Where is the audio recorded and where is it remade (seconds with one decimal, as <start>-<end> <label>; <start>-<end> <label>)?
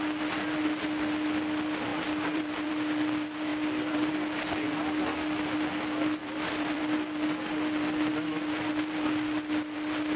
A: 0.0-1.9 recorded; 1.9-2.7 remade; 2.7-3.5 recorded; 3.5-4.1 remade; 4.1-6.2 recorded; 6.2-6.8 remade; 6.8-10.2 recorded